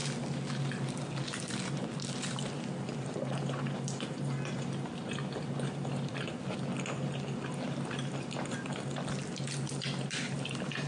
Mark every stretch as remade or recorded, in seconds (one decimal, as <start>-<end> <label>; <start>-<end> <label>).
0.0-5.1 remade; 5.1-10.9 recorded